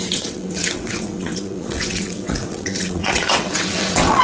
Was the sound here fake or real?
fake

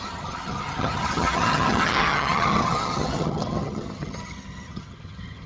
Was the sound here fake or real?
fake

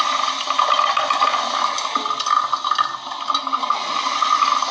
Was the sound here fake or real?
real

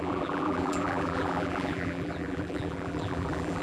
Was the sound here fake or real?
fake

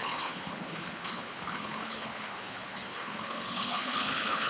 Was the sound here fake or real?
fake